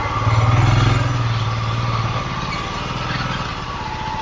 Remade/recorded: recorded